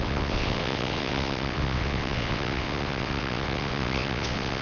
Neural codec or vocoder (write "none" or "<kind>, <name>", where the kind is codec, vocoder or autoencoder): vocoder, WaveNeXt